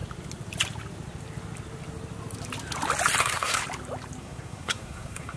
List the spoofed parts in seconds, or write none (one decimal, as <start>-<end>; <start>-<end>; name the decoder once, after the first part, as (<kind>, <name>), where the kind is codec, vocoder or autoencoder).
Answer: 3.2-3.6 (codec, SNAC); 4.2-5.4